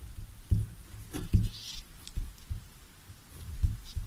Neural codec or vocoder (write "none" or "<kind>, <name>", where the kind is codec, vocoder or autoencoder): none